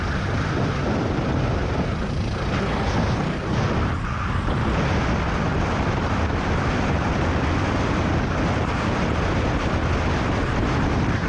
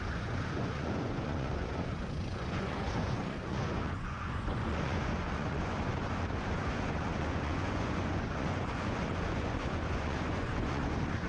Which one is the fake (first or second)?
second